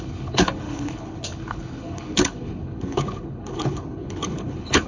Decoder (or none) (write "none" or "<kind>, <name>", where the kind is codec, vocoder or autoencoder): codec, HILCodec